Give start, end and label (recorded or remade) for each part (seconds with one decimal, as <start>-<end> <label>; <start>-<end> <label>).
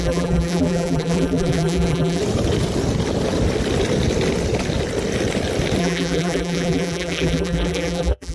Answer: 0.0-2.2 remade; 2.2-5.8 recorded; 5.8-8.3 remade